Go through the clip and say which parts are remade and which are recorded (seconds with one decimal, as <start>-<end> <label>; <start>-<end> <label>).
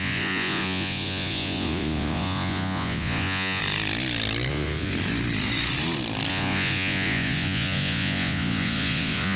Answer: 0.0-3.6 remade; 3.6-4.5 recorded; 4.5-4.9 remade; 4.9-6.3 recorded; 6.3-9.4 remade